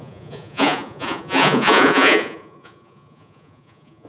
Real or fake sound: fake